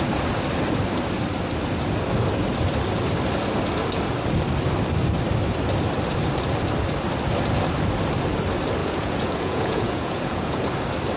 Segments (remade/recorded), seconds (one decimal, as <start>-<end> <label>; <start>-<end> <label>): 0.0-8.8 recorded; 8.8-10.7 remade; 10.7-11.2 recorded